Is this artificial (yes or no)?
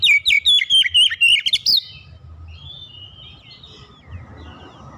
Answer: no